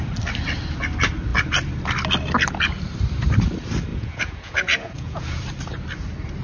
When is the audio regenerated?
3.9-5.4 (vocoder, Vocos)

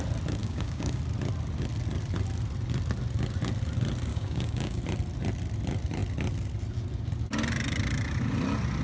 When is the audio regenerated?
0.4-1.0 (codec, DAC); 4.1-4.8